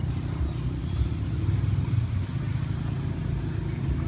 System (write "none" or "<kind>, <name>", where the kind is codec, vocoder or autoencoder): none